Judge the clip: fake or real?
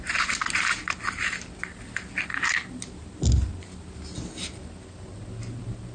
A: real